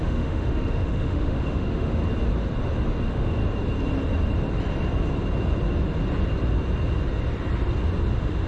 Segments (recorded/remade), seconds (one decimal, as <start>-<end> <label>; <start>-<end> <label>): 0.0-2.0 remade; 2.0-3.0 recorded; 3.0-3.4 remade; 3.4-8.1 recorded; 8.1-8.5 remade